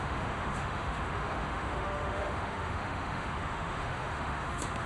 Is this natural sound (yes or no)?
no